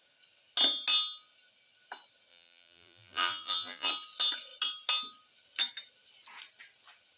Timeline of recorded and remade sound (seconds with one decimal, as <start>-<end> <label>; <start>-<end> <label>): 0.0-2.3 recorded; 2.3-3.9 remade; 3.9-7.2 recorded